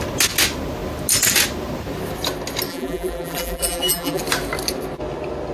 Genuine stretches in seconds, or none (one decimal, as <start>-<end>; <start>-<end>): 0.0-2.7; 4.2-5.5